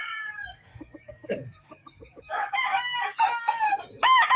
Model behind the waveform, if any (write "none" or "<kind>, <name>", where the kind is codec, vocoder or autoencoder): codec, DAC